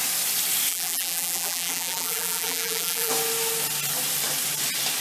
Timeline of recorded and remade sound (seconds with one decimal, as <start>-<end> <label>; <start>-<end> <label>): 0.0-0.7 recorded; 0.7-3.1 remade; 3.1-5.0 recorded